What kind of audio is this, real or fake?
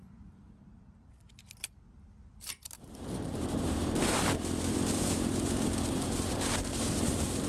fake